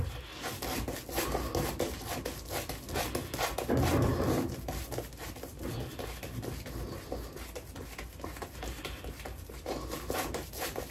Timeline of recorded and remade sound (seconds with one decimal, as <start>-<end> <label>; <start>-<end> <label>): 0.0-10.9 recorded